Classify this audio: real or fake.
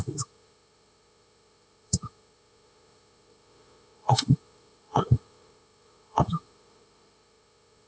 fake